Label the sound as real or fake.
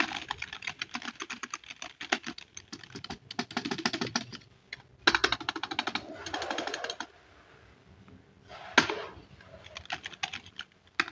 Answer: real